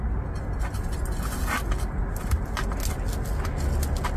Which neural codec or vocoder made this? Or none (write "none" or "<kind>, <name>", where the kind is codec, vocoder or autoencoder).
none